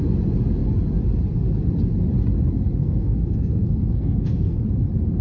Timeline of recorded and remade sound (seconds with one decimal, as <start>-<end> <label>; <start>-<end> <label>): 0.0-2.8 recorded; 2.8-4.6 remade; 4.6-5.2 recorded